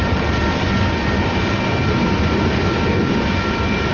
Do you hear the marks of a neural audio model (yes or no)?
no